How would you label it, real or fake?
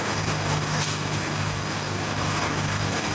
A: fake